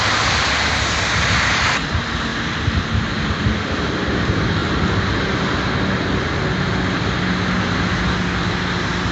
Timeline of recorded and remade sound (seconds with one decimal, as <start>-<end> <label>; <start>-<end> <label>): 0.0-9.1 recorded